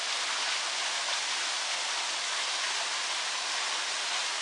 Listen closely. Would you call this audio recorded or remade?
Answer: recorded